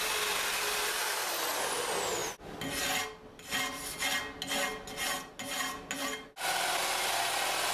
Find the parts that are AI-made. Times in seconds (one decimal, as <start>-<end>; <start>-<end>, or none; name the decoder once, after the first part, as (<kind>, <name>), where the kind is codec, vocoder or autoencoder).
none